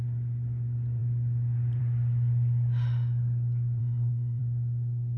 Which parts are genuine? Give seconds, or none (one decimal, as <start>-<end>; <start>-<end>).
0.0-3.8; 4.4-5.2